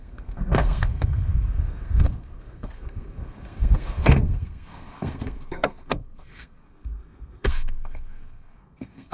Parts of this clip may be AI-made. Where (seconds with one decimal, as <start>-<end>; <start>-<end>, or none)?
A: 0.0-9.1